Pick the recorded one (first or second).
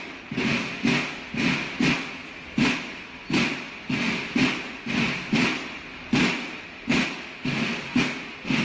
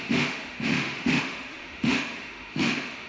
first